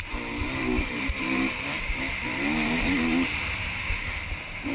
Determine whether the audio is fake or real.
fake